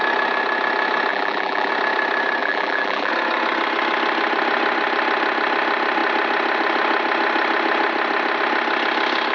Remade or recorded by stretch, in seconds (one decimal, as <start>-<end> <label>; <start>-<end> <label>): 0.0-1.1 recorded; 1.1-1.7 remade; 1.7-2.4 recorded; 2.4-3.1 remade; 3.1-9.3 recorded